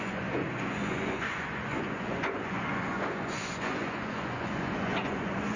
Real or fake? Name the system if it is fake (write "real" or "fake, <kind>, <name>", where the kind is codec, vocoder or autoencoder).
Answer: fake, vocoder, Vocos